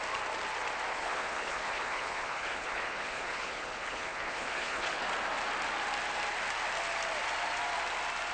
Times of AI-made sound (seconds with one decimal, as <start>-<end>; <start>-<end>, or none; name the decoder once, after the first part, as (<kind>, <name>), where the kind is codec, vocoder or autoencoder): 0.9-5.0 (codec, HILCodec)